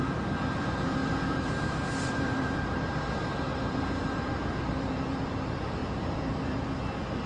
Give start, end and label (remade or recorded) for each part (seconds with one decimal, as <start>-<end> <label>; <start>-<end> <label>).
0.0-0.6 recorded; 0.6-7.3 remade